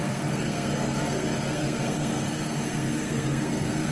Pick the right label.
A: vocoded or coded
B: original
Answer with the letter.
A